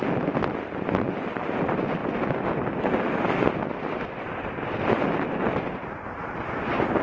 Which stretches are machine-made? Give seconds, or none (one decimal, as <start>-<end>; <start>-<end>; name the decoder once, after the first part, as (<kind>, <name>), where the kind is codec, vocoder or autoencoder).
none